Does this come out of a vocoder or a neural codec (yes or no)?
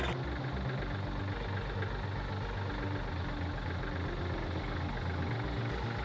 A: no